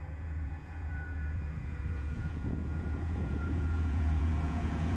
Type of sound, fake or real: fake